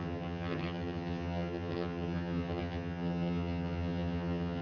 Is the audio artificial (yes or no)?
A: yes